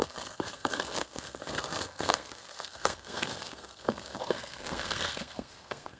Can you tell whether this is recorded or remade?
remade